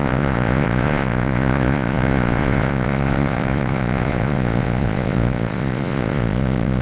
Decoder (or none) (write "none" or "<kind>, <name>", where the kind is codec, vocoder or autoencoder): vocoder, Vocos